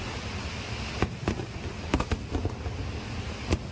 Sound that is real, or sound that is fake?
real